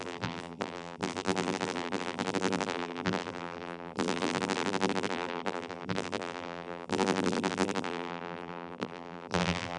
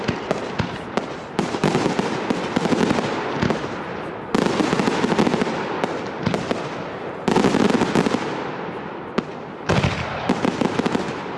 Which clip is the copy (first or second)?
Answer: first